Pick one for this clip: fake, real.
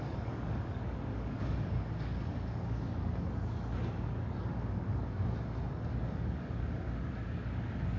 fake